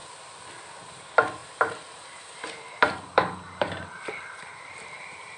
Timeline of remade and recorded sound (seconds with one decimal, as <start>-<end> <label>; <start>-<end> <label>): 0.0-0.9 recorded; 0.9-5.4 remade